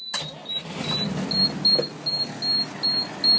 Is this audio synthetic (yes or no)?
no